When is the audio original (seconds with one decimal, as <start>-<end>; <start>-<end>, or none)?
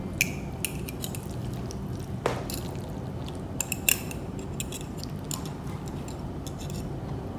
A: 0.0-7.4